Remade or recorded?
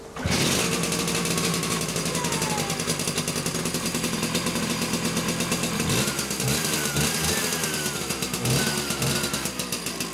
recorded